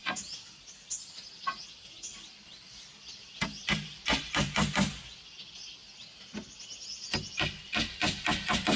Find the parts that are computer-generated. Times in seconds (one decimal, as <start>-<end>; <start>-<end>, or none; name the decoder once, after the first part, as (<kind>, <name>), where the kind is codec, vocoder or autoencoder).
1.6-5.8 (vocoder, BigVGAN v2); 7.3-8.8